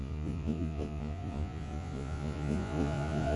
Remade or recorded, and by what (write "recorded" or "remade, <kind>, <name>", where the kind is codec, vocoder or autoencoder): remade, vocoder, Vocos